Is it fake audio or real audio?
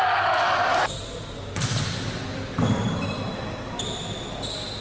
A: real